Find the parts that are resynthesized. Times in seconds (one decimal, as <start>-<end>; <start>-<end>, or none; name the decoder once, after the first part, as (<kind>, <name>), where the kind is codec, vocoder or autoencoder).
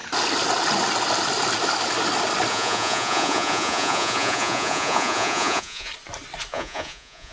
2.5-5.9 (vocoder, Vocos); 6.5-7.3